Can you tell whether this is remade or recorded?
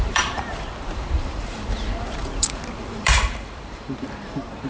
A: remade